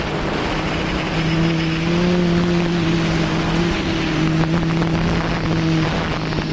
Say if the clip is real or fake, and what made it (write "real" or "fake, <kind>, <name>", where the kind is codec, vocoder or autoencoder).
real